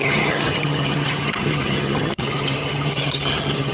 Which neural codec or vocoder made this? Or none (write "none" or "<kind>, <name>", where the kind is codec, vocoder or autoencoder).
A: vocoder, HiFi-GAN